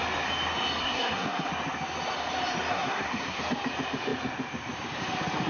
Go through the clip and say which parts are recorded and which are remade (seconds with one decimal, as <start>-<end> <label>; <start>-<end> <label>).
0.0-0.8 recorded; 0.8-1.5 remade; 1.5-2.7 recorded; 2.7-3.4 remade; 3.4-5.5 recorded